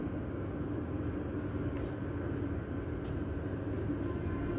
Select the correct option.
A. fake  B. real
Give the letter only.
B